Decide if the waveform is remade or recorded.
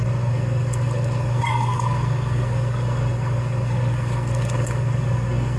remade